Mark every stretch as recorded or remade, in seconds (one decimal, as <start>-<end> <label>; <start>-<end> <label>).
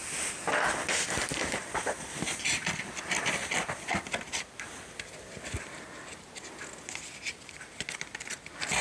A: 0.0-8.8 recorded